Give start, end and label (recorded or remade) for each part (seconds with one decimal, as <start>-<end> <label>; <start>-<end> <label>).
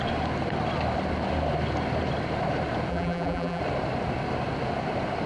0.0-2.9 recorded; 2.9-3.6 remade; 3.6-5.3 recorded